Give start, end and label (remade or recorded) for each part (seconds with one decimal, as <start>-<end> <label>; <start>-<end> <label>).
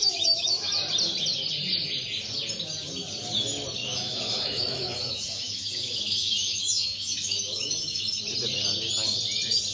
0.0-0.7 remade; 0.7-3.8 recorded; 3.8-8.2 remade; 8.2-9.7 recorded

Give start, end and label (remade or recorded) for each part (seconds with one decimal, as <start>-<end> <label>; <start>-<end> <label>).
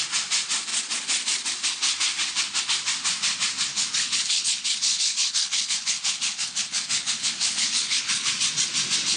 0.0-3.7 recorded; 3.7-8.3 remade; 8.3-9.2 recorded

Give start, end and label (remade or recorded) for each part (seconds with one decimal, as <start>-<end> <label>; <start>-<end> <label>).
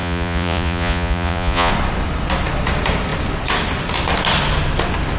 0.0-1.7 remade; 1.7-5.2 recorded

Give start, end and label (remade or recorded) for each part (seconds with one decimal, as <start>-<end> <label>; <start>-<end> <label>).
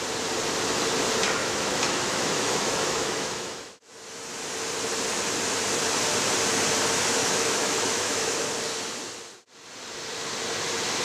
0.0-1.4 recorded; 1.4-3.9 remade; 3.9-7.2 recorded; 7.2-8.4 remade; 8.4-11.0 recorded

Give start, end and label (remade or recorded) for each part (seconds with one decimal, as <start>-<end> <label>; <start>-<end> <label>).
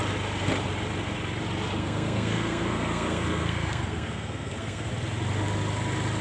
0.0-1.8 recorded; 1.8-4.9 remade; 4.9-6.2 recorded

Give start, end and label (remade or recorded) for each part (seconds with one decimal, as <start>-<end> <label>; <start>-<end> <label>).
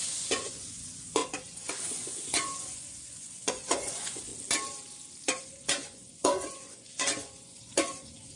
0.0-4.3 remade; 4.3-5.4 recorded; 5.4-8.4 remade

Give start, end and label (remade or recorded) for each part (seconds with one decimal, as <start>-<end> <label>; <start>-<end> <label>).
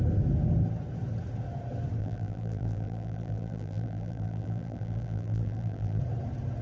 0.0-2.0 recorded; 2.0-6.0 remade; 6.0-6.6 recorded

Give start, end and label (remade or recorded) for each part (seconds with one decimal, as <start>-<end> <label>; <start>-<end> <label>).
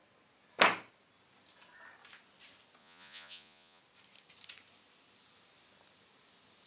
0.0-2.8 recorded; 2.8-3.8 remade; 3.8-6.7 recorded